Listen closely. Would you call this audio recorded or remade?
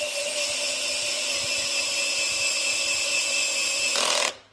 recorded